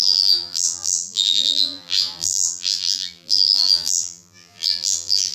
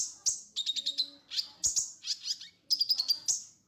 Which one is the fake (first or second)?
first